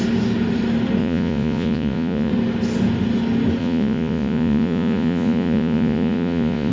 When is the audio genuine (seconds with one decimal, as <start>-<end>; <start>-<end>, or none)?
0.0-1.0; 2.3-3.6